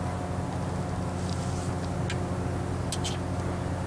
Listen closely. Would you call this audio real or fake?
real